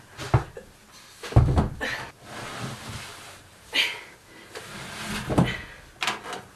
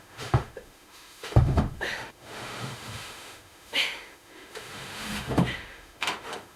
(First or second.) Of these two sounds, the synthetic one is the second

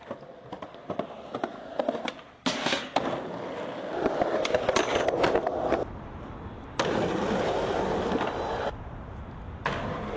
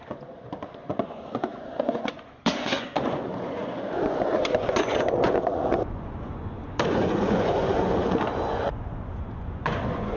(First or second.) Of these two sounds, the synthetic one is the second